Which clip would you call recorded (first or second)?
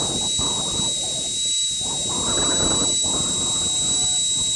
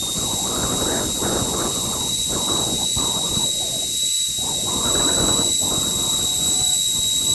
first